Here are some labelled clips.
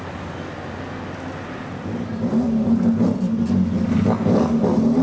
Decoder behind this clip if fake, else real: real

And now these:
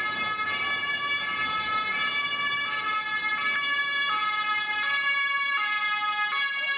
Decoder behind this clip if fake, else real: real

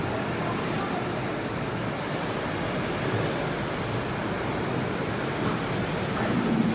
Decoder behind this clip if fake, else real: fake, vocoder, BigVGAN v2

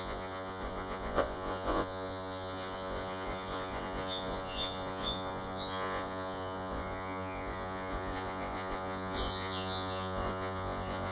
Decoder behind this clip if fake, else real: fake, vocoder, Vocos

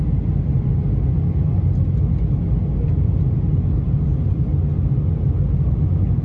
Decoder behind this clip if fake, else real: real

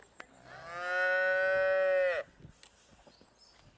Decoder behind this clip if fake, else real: real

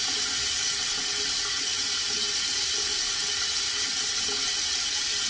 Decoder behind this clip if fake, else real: real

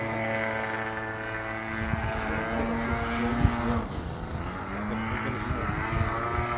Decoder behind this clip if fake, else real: real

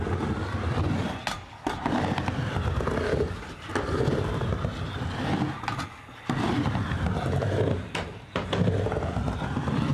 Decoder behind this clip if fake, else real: real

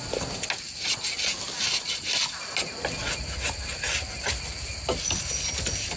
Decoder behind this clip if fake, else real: real